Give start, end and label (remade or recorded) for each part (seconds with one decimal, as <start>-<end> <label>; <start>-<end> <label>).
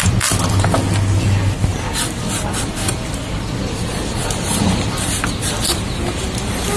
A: 0.0-6.8 recorded